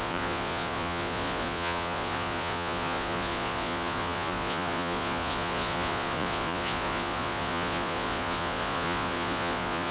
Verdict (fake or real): fake